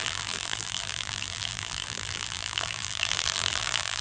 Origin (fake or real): fake